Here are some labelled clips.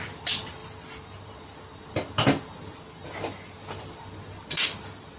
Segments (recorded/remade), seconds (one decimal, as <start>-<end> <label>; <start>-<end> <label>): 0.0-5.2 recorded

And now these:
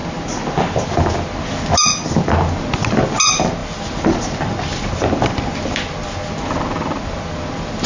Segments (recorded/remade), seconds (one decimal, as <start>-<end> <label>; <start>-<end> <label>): 0.0-3.6 recorded; 3.6-6.3 remade; 6.3-7.9 recorded

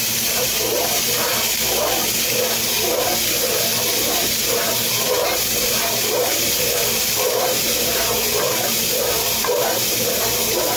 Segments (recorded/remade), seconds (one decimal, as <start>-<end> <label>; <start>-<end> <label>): 0.0-0.7 remade; 0.7-4.0 recorded; 4.0-10.8 remade

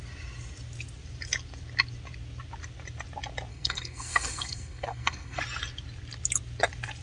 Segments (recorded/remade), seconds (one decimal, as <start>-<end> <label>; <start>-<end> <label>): 0.0-3.5 recorded; 3.5-5.4 remade; 5.4-7.0 recorded

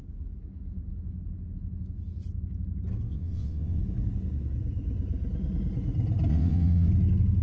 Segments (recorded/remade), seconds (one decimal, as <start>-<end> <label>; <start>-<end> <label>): 0.0-3.1 recorded; 3.1-3.8 remade; 3.8-6.3 recorded; 6.3-6.9 remade; 6.9-7.4 recorded

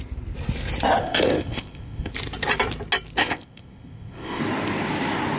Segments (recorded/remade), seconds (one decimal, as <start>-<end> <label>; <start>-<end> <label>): 0.0-1.0 recorded; 1.0-2.1 remade; 2.1-3.2 recorded; 3.2-4.4 remade; 4.4-5.4 recorded

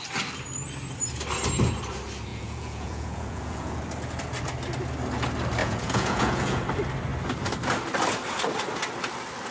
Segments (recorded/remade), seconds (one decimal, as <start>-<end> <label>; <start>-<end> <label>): 0.0-2.3 recorded; 2.3-3.8 remade; 3.8-5.6 recorded; 5.6-6.6 remade; 6.6-9.5 recorded